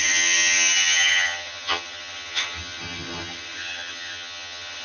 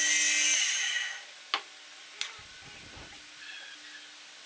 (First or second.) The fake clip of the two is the first